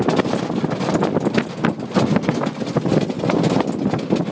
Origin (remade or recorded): recorded